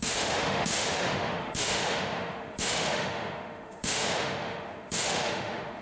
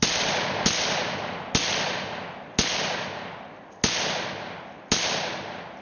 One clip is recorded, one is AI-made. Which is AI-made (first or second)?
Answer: first